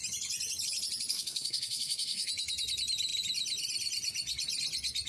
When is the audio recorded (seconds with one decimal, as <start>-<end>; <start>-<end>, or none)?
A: 0.0-1.1; 2.3-5.1